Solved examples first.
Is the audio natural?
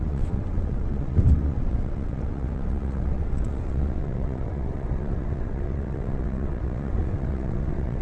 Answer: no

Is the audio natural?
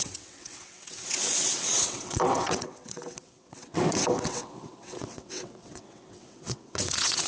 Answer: no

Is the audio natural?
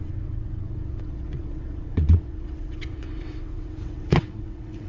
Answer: no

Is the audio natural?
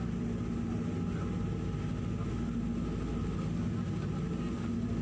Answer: yes